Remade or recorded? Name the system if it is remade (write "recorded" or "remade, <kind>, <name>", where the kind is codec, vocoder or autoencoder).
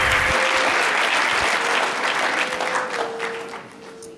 recorded